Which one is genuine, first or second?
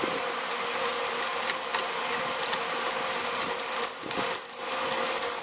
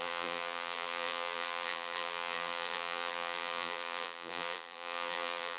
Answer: first